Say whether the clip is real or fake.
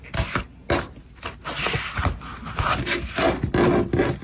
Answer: real